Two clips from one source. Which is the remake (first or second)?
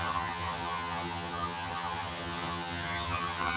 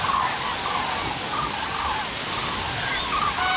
first